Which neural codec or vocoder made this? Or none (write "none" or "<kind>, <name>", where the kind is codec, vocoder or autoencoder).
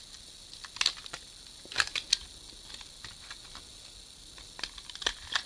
none